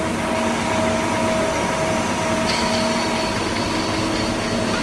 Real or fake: real